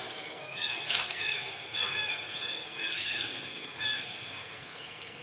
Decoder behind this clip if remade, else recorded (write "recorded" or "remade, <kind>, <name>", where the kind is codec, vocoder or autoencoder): remade, codec, SNAC